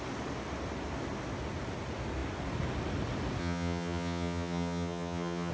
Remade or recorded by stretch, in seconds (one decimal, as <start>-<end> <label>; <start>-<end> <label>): 0.0-3.4 recorded; 3.4-5.5 remade